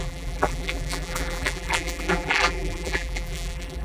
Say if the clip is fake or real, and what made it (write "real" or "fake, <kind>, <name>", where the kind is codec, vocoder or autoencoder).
fake, vocoder, BigVGAN v2